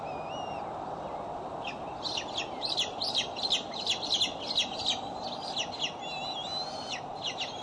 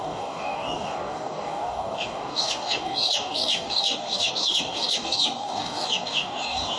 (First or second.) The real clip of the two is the first